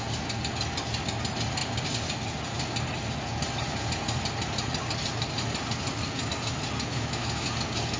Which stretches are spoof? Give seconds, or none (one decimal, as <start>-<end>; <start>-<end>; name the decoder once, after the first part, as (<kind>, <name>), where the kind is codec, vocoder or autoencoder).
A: 6.9-7.5 (autoencoder, DAC-VAE)